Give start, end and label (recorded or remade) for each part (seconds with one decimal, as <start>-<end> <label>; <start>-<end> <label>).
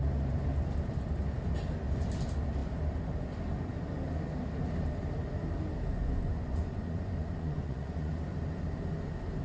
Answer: 0.0-5.9 recorded; 5.9-8.1 remade; 8.1-9.4 recorded